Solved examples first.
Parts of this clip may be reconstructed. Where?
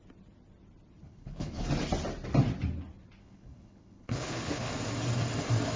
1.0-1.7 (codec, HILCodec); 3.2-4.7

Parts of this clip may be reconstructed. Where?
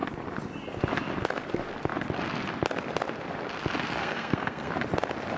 4.0-4.7 (codec, SNAC)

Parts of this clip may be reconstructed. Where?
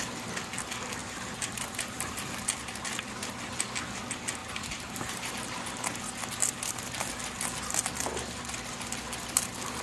1.0-2.3 (vocoder, BigVGAN v2); 4.4-5.3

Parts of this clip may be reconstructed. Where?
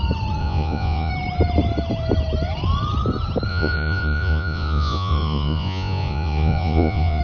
0.4-1.1 (vocoder, Vocos); 3.5-7.2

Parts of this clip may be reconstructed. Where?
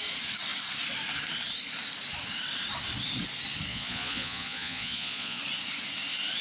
3.7-5.4 (vocoder, Vocos)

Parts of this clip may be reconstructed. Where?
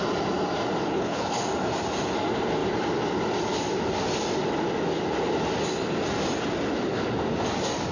0.8-1.4 (codec, HILCodec)